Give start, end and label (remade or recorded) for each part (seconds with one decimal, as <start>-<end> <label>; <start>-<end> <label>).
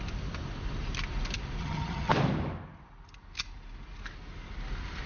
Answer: 0.0-1.6 recorded; 1.6-2.1 remade; 2.1-5.1 recorded